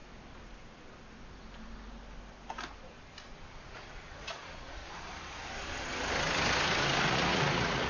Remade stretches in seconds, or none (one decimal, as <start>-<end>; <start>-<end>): 3.5-4.8; 7.0-7.9